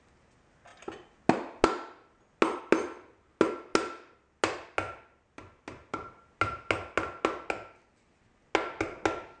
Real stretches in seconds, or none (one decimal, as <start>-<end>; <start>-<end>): 0.0-9.4